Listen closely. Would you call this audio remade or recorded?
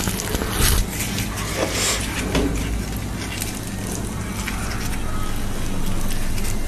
recorded